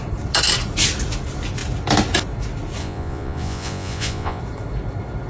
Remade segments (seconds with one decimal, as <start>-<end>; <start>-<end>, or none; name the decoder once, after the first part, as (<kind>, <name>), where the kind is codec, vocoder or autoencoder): 2.8-4.4 (vocoder, Vocos)